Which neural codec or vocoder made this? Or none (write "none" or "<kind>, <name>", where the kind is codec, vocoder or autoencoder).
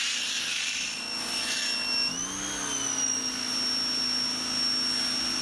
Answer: none